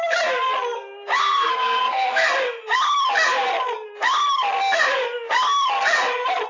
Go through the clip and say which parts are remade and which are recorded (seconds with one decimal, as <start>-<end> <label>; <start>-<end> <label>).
0.0-1.2 recorded; 1.2-2.3 remade; 2.3-6.5 recorded